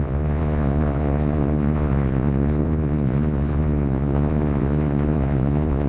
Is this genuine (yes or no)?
no